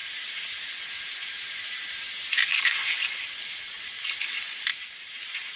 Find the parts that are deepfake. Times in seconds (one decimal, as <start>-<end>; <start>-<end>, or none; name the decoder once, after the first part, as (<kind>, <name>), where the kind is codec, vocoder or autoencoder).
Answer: 0.0-0.8 (vocoder, Vocos); 2.5-3.2; 4.7-5.6